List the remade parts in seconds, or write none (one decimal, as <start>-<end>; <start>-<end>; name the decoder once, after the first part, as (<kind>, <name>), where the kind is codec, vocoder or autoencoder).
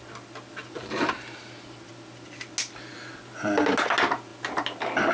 none